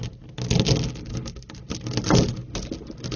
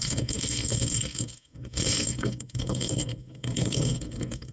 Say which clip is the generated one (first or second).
second